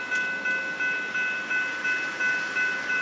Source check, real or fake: real